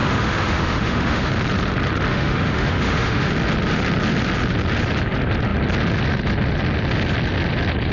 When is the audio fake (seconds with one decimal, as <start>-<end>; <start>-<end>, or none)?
0.0-1.3; 2.1-3.3